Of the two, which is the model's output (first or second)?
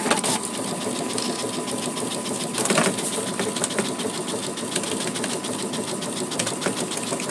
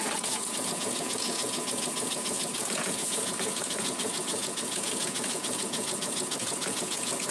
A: second